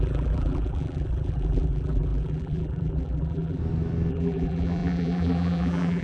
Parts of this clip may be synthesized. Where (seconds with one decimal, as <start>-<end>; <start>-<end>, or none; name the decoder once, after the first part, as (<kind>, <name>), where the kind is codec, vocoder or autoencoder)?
0.0-3.6 (vocoder, BigVGAN v2); 4.1-6.0